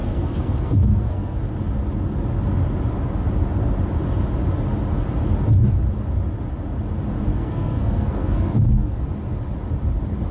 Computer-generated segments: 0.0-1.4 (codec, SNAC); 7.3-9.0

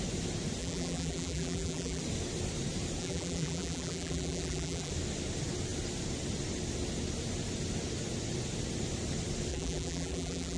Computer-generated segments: 0.6-2.0 (vocoder, BigVGAN v2); 3.0-4.9; 9.5-10.6

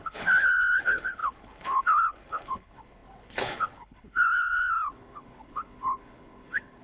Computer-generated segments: 0.0-6.8 (codec, HILCodec)

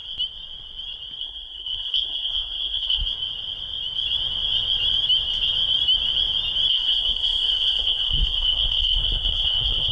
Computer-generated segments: 1.2-3.0 (codec, SNAC); 6.7-9.9

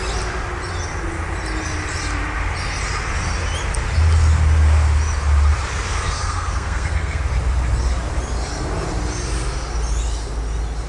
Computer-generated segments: 5.9-7.2 (codec, SNAC)

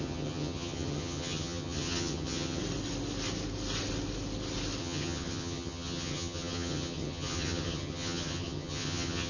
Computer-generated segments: 0.0-2.6 (vocoder, HiFi-GAN); 4.8-9.3